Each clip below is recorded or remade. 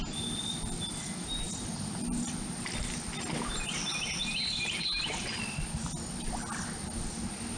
recorded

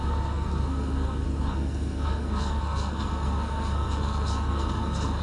remade